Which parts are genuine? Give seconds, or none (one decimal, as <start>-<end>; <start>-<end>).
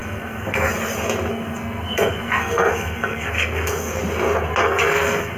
0.7-1.3; 4.0-4.6